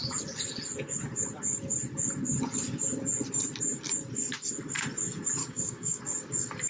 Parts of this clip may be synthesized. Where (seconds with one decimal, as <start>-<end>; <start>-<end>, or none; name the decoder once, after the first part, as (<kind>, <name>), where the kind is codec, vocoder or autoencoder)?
5.4-6.0 (codec, DAC)